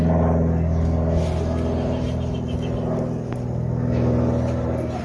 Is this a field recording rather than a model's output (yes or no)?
yes